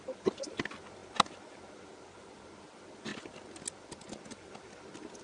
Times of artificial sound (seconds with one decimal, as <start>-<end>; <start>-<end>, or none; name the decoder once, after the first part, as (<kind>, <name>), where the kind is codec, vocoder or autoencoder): none